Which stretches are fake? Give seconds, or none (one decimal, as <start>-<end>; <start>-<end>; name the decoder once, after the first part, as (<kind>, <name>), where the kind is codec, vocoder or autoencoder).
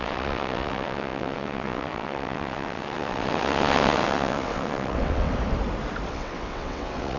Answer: 0.0-5.3 (vocoder, WaveNeXt); 6.1-7.2